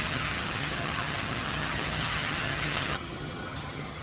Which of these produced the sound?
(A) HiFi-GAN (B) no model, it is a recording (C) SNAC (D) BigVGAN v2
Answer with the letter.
A